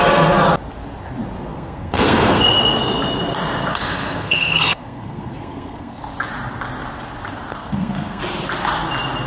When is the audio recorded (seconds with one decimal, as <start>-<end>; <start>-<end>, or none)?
0.0-1.5; 2.4-3.7; 6.0-7.5; 8.2-9.3